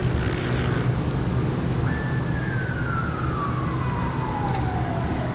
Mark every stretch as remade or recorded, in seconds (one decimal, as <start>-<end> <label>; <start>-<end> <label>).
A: 0.0-0.9 recorded; 0.9-1.3 remade; 1.3-4.5 recorded; 4.5-5.3 remade

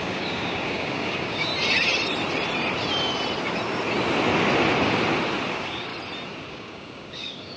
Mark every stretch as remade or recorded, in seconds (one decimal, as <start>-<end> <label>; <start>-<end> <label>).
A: 0.0-1.5 remade; 1.5-5.5 recorded; 5.5-5.9 remade; 5.9-6.5 recorded; 6.5-7.6 remade

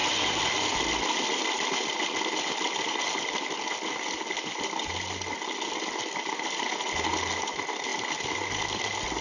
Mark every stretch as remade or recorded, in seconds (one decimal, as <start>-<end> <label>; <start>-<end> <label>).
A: 0.0-9.2 recorded

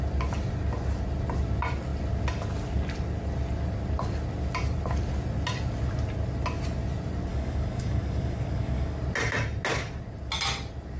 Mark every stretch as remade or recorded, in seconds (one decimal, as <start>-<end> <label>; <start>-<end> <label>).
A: 0.0-7.3 recorded; 7.3-9.0 remade; 9.0-11.0 recorded

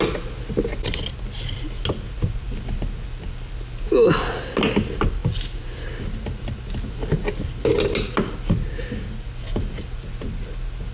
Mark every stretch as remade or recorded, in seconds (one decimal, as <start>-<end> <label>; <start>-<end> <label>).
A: 0.0-10.9 recorded

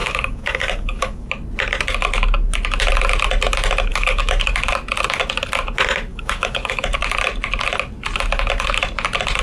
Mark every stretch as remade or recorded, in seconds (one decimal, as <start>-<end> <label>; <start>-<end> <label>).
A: 0.0-1.3 remade; 1.3-3.9 recorded; 3.9-4.5 remade; 4.5-6.1 recorded; 6.1-7.0 remade; 7.0-9.4 recorded

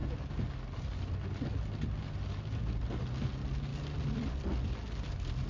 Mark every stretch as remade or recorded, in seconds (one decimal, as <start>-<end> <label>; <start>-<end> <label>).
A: 0.0-5.5 recorded